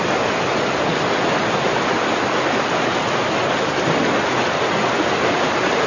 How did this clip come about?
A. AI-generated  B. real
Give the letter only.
B